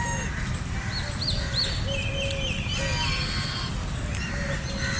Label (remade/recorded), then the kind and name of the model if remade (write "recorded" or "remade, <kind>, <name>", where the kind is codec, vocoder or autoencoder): recorded